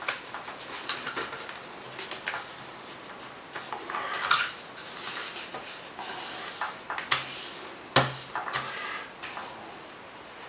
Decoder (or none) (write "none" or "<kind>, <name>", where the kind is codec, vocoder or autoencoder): none